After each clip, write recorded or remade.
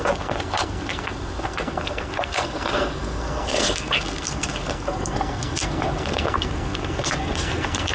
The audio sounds remade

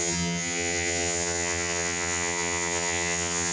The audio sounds remade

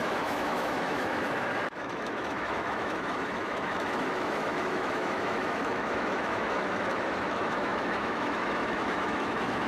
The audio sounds remade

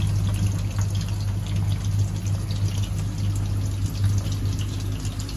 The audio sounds recorded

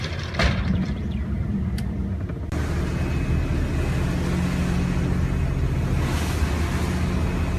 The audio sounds recorded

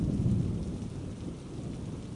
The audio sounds recorded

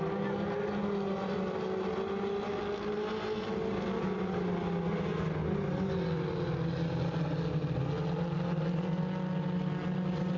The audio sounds recorded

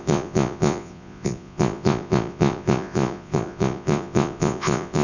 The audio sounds remade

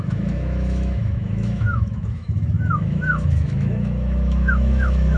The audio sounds remade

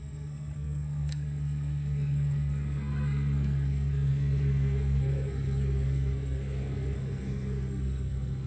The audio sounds remade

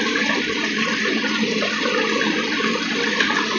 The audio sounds recorded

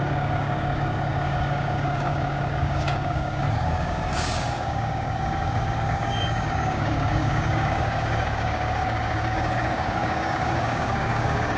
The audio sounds remade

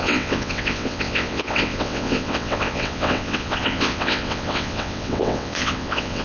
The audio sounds remade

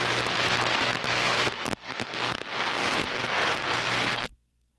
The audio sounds remade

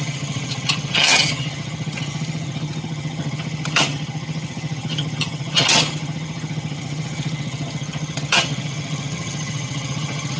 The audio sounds remade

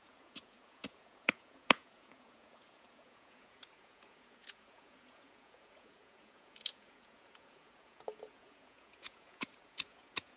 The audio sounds remade